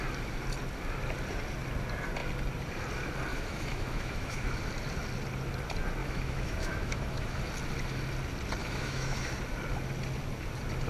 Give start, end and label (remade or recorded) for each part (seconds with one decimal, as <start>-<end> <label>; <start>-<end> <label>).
0.0-3.3 recorded; 3.3-4.6 remade; 4.6-6.0 recorded; 6.0-7.4 remade; 7.4-8.6 recorded; 8.6-9.3 remade; 9.3-10.9 recorded